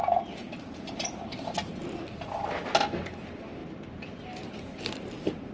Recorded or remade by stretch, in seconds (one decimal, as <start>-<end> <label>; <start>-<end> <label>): 0.0-5.5 recorded

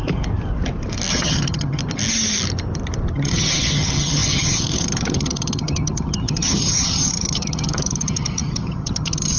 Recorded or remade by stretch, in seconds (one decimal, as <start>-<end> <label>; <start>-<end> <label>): 0.0-1.1 recorded; 1.1-1.8 remade; 1.8-3.1 recorded; 3.1-9.4 remade

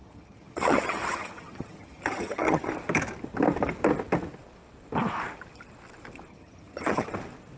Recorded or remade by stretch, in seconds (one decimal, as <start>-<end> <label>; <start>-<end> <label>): 0.0-2.7 remade; 2.7-6.3 recorded; 6.3-7.1 remade; 7.1-7.6 recorded

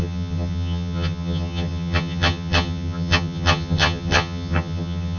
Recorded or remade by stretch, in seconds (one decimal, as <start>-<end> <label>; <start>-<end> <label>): 0.0-5.2 remade

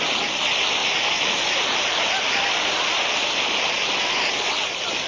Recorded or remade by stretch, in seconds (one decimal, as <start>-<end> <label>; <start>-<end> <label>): 0.0-5.1 recorded